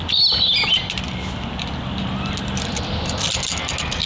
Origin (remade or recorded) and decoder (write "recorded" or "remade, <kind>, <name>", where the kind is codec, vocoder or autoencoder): recorded